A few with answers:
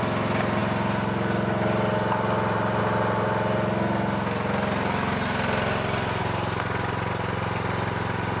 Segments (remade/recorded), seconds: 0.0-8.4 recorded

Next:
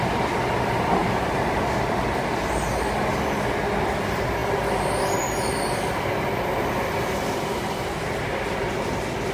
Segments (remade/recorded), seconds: 0.0-1.0 recorded; 1.0-2.7 remade; 2.7-9.3 recorded

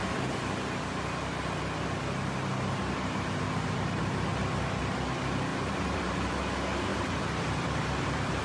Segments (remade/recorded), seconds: 0.0-5.5 recorded; 5.5-6.3 remade; 6.3-6.9 recorded; 6.9-8.4 remade

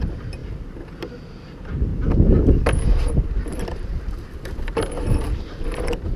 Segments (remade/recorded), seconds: 0.0-0.4 remade; 0.4-1.3 recorded; 1.3-1.9 remade; 1.9-2.7 recorded; 2.7-6.2 remade

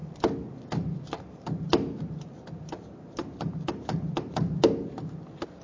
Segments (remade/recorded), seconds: 0.0-5.6 recorded